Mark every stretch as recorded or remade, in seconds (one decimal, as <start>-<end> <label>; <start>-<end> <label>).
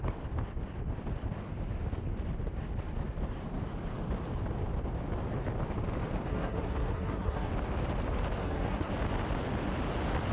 0.0-6.3 recorded; 6.3-7.5 remade; 7.5-8.4 recorded; 8.4-8.9 remade; 8.9-10.3 recorded